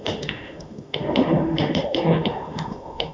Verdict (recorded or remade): remade